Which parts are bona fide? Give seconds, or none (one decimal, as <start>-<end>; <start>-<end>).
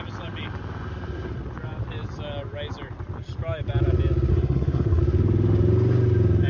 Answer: 0.0-4.3; 5.0-6.5